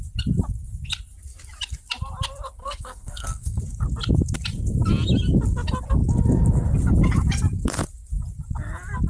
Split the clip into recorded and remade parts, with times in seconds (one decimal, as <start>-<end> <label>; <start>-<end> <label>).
0.0-2.6 recorded; 2.6-3.6 remade; 3.6-9.1 recorded